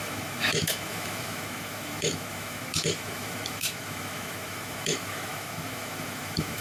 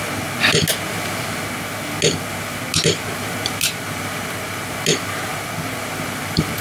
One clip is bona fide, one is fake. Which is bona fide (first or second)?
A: second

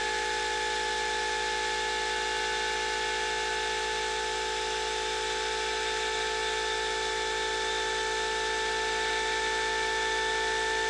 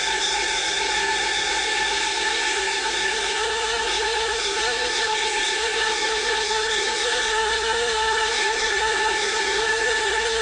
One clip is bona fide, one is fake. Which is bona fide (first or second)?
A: first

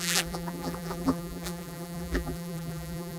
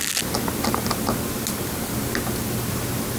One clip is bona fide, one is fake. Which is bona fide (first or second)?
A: second